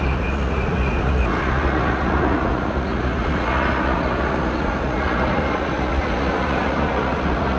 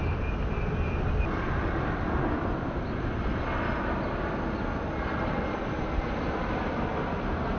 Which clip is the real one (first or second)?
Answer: second